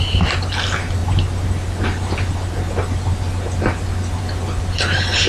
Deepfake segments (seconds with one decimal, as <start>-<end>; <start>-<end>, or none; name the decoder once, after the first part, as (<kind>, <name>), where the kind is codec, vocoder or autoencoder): none

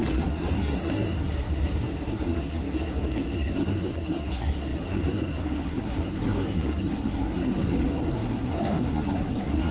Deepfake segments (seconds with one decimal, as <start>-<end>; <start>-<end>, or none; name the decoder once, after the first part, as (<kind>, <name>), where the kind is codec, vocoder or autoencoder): 0.0-9.7 (codec, SNAC)

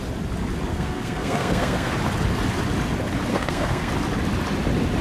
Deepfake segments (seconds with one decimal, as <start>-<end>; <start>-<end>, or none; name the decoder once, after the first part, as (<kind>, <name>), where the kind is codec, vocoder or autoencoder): 0.7-1.9 (codec, SNAC); 3.3-3.9